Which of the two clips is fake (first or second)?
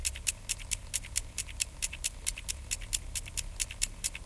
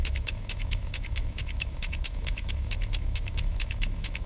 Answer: second